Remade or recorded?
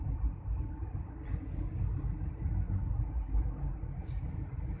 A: recorded